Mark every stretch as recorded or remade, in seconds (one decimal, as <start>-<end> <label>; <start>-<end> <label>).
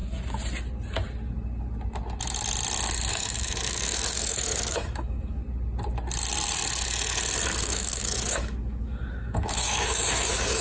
0.0-3.1 recorded; 3.1-5.4 remade; 5.4-7.6 recorded; 7.6-10.6 remade